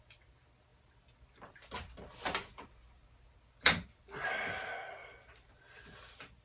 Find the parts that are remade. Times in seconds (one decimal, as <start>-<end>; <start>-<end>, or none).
none